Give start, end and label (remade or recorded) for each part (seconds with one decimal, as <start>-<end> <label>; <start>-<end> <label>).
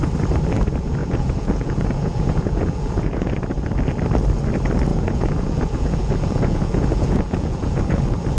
0.0-1.0 recorded; 1.0-3.3 remade; 3.3-4.9 recorded; 4.9-8.0 remade; 8.0-8.4 recorded